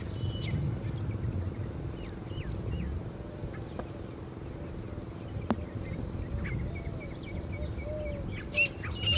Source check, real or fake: real